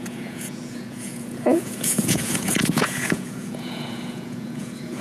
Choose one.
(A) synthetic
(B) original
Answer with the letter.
A